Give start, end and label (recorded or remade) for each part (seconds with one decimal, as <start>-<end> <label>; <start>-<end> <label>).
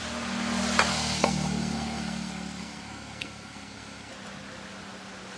0.0-0.9 recorded; 0.9-4.1 remade; 4.1-5.4 recorded